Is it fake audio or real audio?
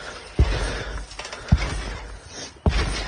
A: real